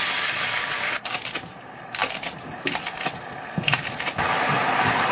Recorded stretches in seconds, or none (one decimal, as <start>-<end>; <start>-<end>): 0.0-5.1